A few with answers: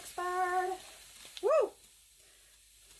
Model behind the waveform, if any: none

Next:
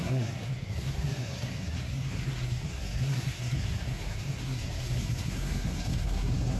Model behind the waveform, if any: codec, SNAC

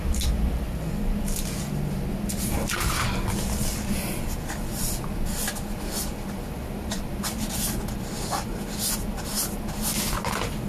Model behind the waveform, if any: none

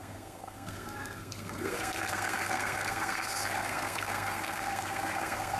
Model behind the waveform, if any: codec, SNAC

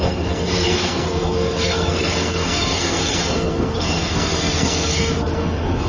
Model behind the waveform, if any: codec, SNAC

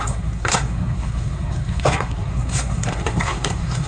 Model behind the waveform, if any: codec, SNAC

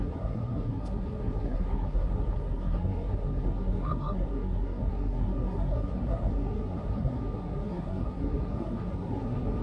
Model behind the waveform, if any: codec, SNAC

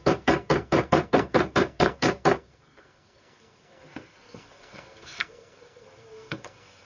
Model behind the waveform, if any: codec, SNAC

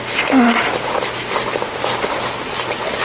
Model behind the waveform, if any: none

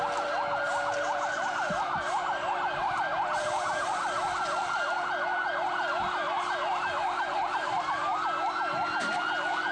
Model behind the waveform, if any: none